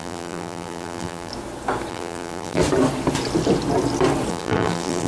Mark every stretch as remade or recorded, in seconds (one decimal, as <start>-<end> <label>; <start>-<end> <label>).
0.0-1.3 remade; 1.3-1.9 recorded; 1.9-2.6 remade; 2.6-4.3 recorded; 4.3-5.1 remade